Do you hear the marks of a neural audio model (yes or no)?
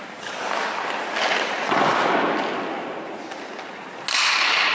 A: no